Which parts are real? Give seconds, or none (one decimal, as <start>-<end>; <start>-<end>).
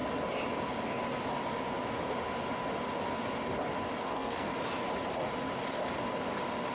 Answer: 0.0-4.0; 4.5-6.7